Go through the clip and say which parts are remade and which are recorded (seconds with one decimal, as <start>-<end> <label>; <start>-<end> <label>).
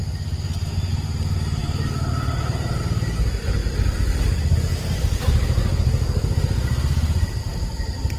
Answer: 0.0-3.6 recorded; 3.6-4.2 remade; 4.2-4.7 recorded; 4.7-7.3 remade; 7.3-8.2 recorded